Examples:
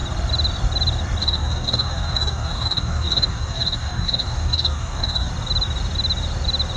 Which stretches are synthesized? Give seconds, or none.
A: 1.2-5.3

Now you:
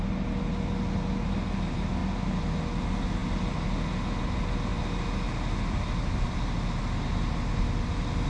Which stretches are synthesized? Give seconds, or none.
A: none

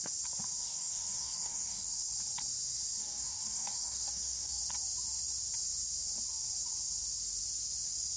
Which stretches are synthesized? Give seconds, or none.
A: 0.6-2.1; 3.0-4.6

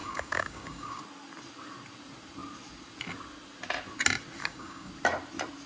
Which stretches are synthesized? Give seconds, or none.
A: 0.0-1.0; 4.4-4.9

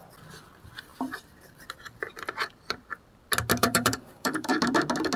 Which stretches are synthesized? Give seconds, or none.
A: 3.6-4.6

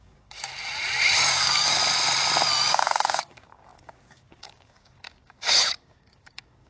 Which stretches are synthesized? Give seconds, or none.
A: 0.0-0.5; 1.3-1.8; 2.7-6.7